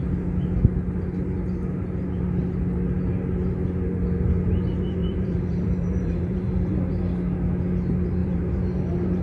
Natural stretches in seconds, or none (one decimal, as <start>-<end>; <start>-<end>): 0.0-5.0; 7.0-8.2